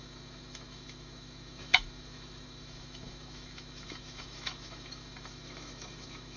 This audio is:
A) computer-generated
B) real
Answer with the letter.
A